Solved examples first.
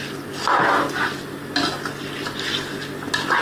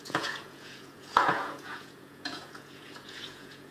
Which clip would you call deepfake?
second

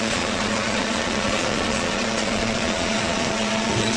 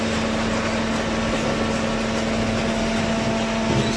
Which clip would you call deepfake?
first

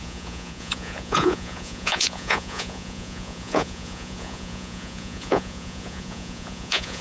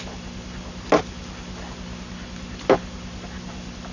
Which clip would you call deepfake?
first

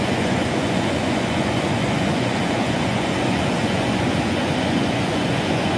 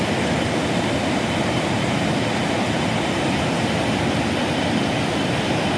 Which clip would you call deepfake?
first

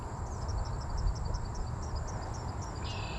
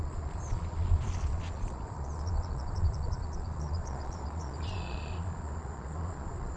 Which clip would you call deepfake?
second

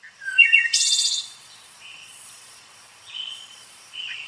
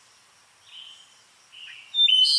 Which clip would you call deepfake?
first